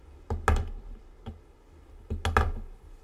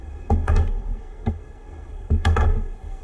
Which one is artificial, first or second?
second